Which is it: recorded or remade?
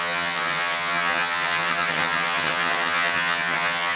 remade